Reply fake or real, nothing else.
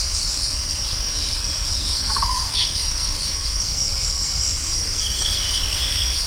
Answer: fake